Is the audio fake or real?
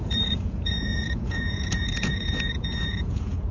fake